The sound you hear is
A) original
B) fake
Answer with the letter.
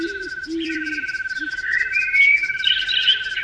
B